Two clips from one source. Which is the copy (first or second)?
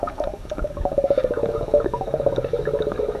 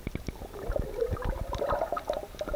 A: first